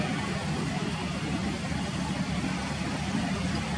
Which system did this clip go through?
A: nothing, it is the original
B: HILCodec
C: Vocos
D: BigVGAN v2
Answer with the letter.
A